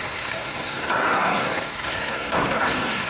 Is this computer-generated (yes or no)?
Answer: yes